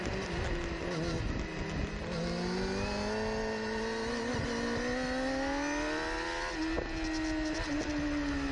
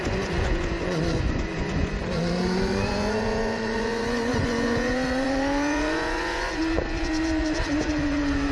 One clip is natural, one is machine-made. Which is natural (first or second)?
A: first